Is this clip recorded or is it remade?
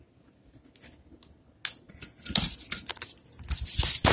recorded